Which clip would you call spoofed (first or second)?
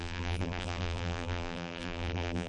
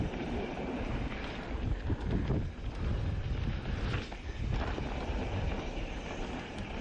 first